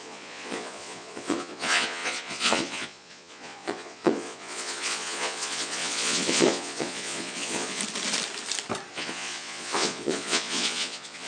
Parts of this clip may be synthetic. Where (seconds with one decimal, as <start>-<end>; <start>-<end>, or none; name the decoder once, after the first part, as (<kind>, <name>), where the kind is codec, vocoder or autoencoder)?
0.0-7.8 (vocoder, Vocos); 8.9-11.3